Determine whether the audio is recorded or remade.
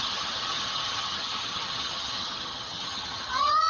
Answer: remade